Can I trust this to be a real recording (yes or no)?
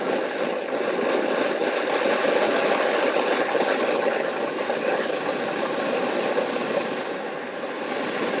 yes